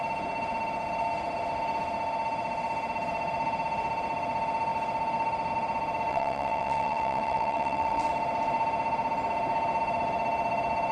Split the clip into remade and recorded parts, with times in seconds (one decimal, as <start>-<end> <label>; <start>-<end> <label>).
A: 0.0-6.1 recorded; 6.1-8.1 remade; 8.1-10.9 recorded